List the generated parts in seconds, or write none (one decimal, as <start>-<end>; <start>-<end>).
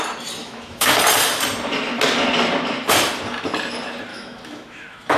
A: 0.4-0.9; 4.1-5.2